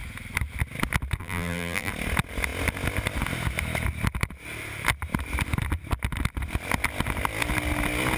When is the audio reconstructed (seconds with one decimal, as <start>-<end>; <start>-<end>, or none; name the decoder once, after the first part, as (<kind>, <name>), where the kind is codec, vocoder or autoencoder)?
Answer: 1.2-1.9 (vocoder, BigVGAN v2)

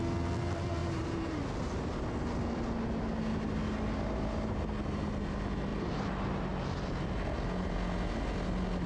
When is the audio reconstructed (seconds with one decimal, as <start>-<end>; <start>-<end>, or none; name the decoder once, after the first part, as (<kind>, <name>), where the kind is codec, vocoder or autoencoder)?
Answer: 0.8-1.4 (vocoder, BigVGAN v2); 5.7-6.4

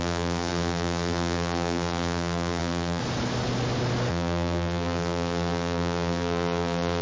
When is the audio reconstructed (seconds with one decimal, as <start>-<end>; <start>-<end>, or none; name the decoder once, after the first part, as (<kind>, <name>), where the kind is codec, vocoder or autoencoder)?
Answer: 0.0-3.0 (vocoder, BigVGAN v2); 4.1-7.0

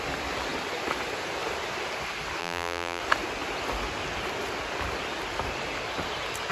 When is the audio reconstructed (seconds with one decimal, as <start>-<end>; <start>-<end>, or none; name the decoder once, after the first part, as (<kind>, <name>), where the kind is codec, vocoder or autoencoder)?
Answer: 2.4-3.0 (vocoder, BigVGAN v2)